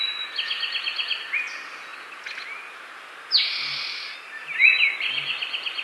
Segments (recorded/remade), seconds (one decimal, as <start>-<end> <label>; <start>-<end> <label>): 0.0-5.8 recorded